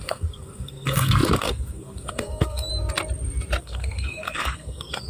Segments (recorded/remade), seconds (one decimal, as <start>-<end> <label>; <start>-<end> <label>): 0.0-2.7 remade; 2.7-3.6 recorded; 3.6-5.1 remade